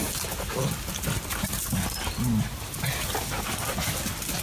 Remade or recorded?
recorded